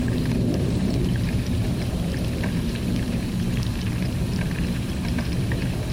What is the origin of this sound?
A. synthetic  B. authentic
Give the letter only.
A